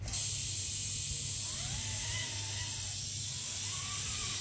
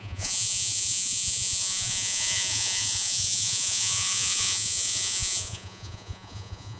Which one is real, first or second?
first